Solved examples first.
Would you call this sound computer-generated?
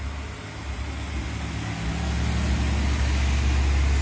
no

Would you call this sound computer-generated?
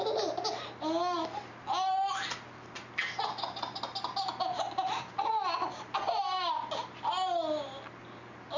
no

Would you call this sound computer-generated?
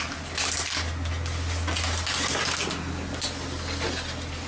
no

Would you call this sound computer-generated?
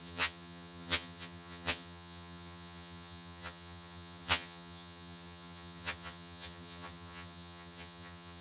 yes